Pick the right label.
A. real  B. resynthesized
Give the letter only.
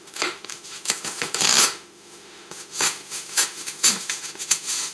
B